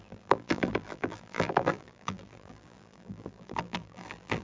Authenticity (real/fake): fake